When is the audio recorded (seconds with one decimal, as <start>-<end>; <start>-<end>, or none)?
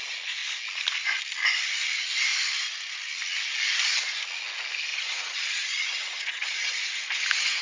0.0-4.9; 6.6-7.6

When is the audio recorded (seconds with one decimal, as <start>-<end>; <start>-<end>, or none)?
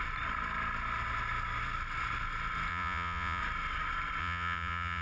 0.0-2.7; 3.4-4.2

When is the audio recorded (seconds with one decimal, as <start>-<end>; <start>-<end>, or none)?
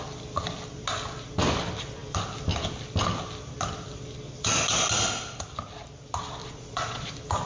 0.0-6.4; 7.1-7.5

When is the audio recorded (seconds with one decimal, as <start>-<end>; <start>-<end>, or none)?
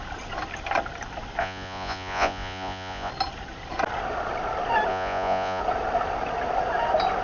0.0-1.4; 3.1-4.9; 5.6-7.2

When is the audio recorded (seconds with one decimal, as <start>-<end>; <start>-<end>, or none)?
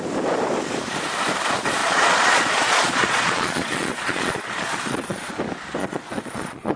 0.0-1.8; 5.3-5.8